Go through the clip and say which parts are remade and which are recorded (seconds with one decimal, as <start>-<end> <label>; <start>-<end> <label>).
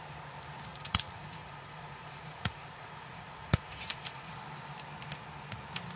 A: 0.0-0.7 recorded; 0.7-4.3 remade; 4.3-6.0 recorded